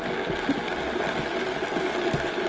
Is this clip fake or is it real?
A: real